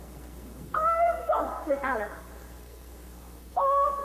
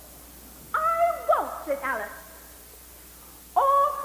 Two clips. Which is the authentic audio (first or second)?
second